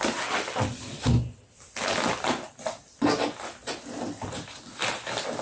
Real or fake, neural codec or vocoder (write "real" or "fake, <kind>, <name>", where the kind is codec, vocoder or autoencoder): real